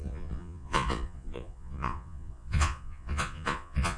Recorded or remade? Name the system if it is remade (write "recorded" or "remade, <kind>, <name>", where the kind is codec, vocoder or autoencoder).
remade, vocoder, Vocos